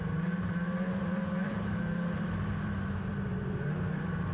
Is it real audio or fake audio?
fake